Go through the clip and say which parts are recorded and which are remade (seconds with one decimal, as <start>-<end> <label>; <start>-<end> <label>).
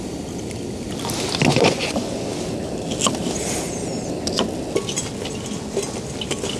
0.0-1.5 recorded; 1.5-2.3 remade; 2.3-6.6 recorded